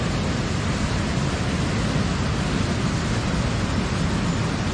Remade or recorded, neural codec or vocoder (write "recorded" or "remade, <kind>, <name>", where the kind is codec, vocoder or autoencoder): recorded